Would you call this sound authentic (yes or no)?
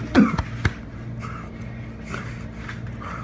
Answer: yes